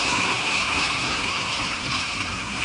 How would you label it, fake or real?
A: fake